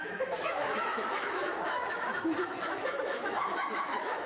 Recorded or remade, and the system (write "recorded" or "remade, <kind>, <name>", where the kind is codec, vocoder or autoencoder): remade, autoencoder, DAC-VAE